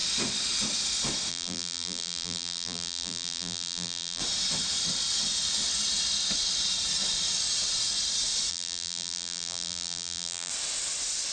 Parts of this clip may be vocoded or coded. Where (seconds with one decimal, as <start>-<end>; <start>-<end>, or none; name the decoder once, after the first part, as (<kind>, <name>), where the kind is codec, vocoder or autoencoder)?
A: 1.3-4.2 (vocoder, BigVGAN v2); 8.5-10.5